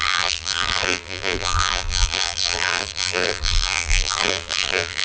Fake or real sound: fake